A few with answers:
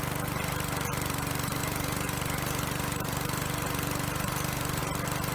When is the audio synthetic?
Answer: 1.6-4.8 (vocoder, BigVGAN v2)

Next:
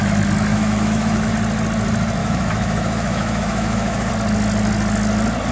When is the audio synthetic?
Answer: 0.5-1.3 (autoencoder, DAC-VAE); 2.2-4.1

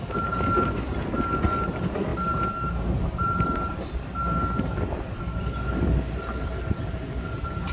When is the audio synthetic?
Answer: 2.1-3.8 (vocoder, BigVGAN v2)